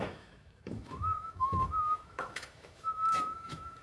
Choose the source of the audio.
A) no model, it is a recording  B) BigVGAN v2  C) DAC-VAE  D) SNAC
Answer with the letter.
C